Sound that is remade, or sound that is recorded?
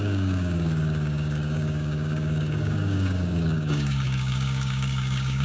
remade